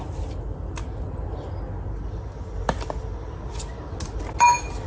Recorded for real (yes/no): yes